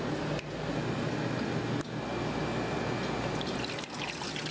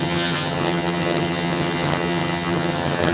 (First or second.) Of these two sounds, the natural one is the first